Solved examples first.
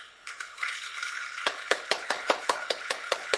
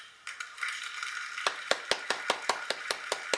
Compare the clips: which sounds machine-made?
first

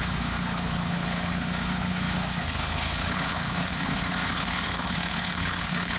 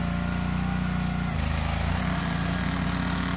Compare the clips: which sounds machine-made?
first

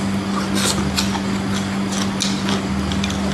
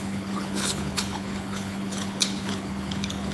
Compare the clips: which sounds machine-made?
second